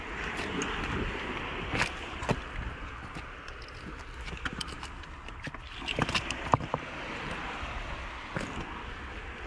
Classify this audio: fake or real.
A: real